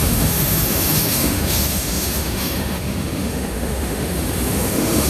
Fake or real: fake